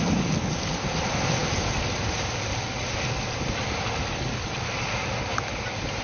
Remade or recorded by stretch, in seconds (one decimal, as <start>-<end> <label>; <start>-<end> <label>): 0.0-6.0 recorded